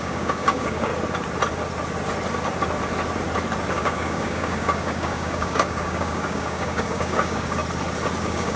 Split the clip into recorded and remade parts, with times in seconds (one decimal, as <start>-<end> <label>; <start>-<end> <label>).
0.0-0.9 remade; 0.9-3.7 recorded; 3.7-7.6 remade; 7.6-8.2 recorded; 8.2-8.6 remade